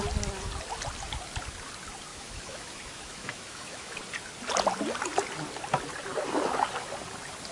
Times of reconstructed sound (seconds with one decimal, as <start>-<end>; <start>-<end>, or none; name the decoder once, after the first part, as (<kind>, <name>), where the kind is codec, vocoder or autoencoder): 2.1-4.0 (autoencoder, DAC-VAE)